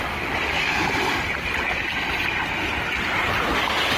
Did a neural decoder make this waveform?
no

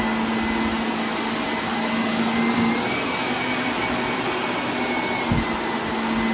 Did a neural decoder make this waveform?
no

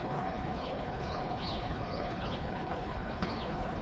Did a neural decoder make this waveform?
yes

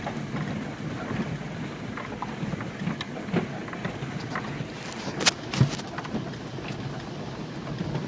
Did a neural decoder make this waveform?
no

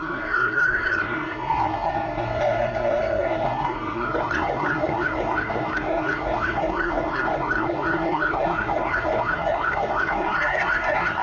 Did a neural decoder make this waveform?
yes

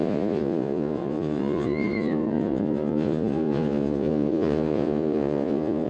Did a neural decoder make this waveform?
yes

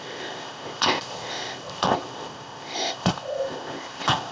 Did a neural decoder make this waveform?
yes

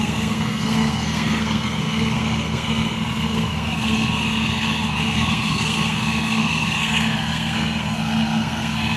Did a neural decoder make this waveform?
yes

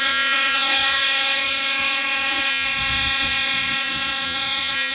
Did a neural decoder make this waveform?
yes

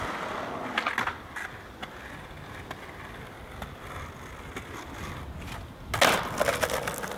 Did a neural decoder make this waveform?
no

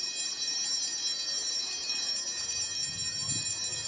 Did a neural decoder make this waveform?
no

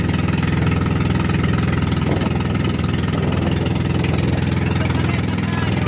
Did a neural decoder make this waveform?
no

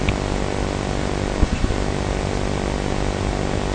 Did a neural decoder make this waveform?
no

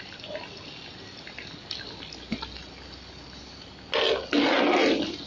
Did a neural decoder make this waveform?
no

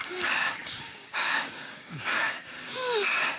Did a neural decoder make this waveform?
yes